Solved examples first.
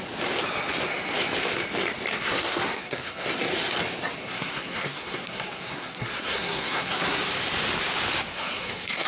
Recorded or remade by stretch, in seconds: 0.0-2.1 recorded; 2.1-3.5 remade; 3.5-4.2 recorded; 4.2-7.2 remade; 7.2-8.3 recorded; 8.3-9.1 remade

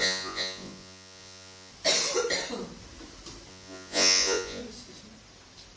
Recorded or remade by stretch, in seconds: 0.0-1.7 remade; 1.7-3.5 recorded; 3.5-4.6 remade; 4.6-5.8 recorded

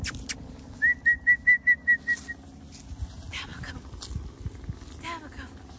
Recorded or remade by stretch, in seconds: 0.0-5.8 recorded